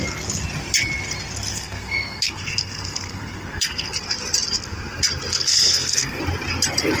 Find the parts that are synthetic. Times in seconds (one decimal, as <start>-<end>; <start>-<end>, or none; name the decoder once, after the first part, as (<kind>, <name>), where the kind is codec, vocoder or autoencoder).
1.5-3.9 (codec, SNAC); 5.3-6.2